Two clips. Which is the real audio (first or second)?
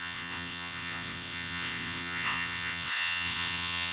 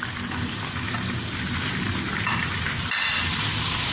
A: second